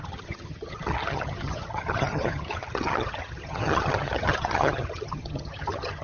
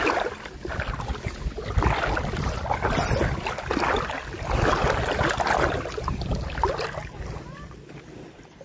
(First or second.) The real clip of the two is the second